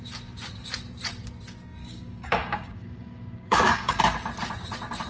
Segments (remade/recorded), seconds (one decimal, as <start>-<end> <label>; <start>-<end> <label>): 0.0-1.8 recorded; 1.8-4.0 remade; 4.0-5.1 recorded